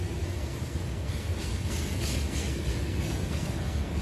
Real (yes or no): no